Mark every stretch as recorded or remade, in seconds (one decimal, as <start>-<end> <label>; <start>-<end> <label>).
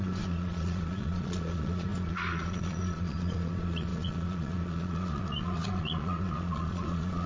0.0-7.3 remade